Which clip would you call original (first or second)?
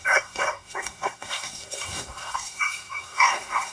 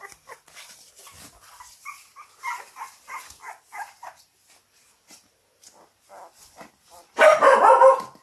second